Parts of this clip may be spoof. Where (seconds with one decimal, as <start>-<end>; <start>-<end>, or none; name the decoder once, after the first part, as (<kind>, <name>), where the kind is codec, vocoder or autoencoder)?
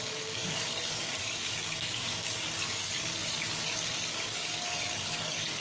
0.0-5.6 (codec, DAC)